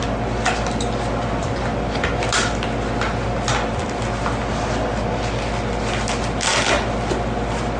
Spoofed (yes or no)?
no